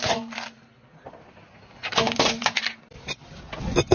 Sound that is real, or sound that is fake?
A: real